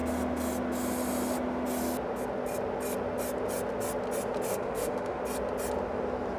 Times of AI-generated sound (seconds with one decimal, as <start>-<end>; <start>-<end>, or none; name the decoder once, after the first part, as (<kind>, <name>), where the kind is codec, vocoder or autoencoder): 4.5-5.2 (autoencoder, DAC-VAE)